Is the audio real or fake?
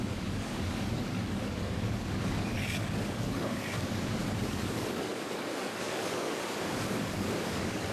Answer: fake